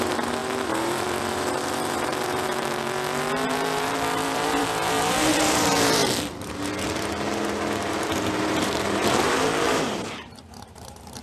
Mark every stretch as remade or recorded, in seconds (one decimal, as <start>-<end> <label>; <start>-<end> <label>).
0.0-6.0 remade; 6.0-7.9 recorded; 7.9-11.2 remade